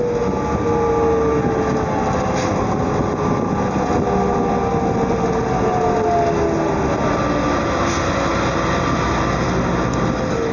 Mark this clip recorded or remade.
recorded